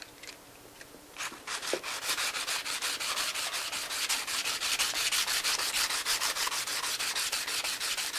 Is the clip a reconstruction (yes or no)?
yes